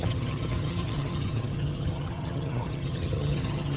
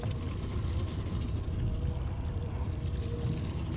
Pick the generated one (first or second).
first